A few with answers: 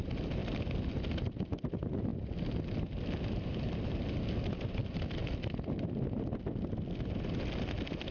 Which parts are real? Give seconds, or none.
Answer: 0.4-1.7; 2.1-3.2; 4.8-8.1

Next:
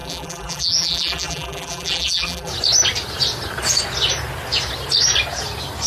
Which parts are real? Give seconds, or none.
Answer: 2.5-5.9

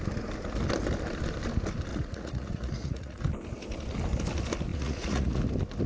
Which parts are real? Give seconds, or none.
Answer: 0.0-1.9; 3.2-4.7; 5.4-5.9

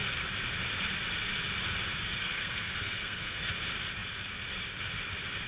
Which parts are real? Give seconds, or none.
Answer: 0.0-2.2; 3.5-5.5

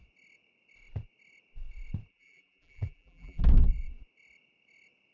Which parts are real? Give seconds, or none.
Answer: 0.0-2.1; 3.4-5.1

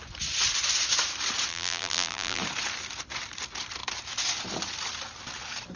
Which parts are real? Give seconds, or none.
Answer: 0.0-1.5; 2.4-5.8

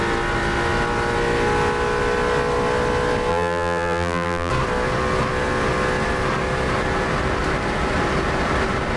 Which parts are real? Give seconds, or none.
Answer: 0.0-3.3; 4.5-9.0

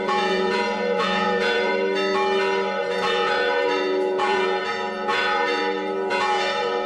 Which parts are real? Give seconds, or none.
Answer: 1.7-2.8; 5.6-6.1